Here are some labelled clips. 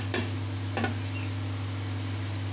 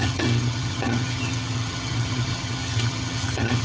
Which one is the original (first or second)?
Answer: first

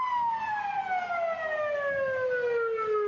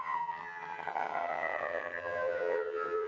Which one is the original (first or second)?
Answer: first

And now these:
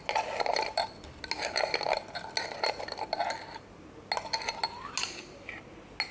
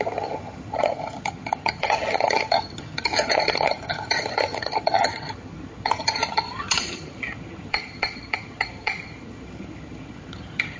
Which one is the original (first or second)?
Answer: first